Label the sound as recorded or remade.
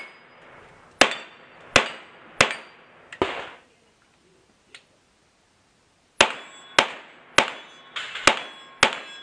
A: recorded